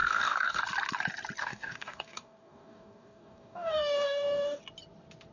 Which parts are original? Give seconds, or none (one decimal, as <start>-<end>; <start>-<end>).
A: 0.6-1.4; 4.6-5.3